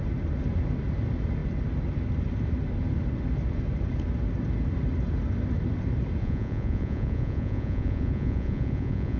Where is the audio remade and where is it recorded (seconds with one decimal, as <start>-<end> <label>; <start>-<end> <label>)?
0.0-6.2 recorded; 6.2-9.2 remade